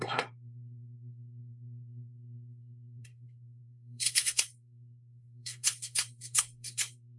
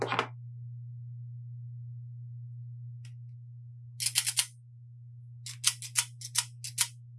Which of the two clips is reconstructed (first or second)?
first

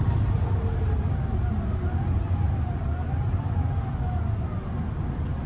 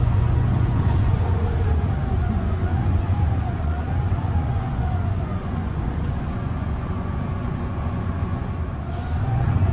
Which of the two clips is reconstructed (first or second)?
second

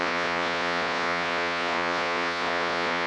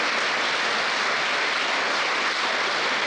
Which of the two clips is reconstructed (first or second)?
first